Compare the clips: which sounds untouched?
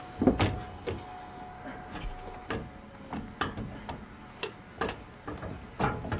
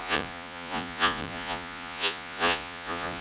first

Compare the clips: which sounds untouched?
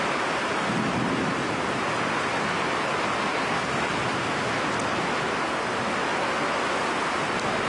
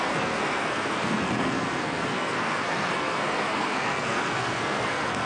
first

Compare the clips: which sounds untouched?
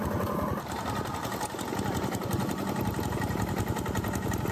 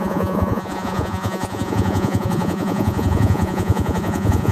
first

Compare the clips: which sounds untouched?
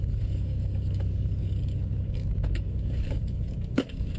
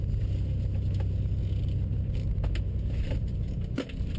second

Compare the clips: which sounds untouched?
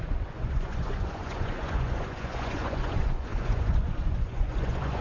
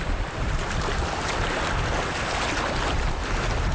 second